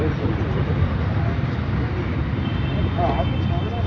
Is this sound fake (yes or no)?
no